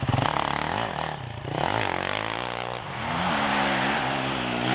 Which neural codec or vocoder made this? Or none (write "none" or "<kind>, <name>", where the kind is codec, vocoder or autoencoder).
none